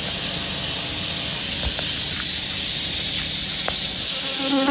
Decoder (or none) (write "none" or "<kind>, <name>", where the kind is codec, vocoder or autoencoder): none